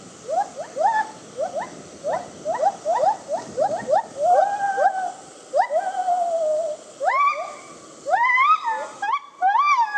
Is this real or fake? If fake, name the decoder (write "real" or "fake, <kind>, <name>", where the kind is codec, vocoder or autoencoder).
real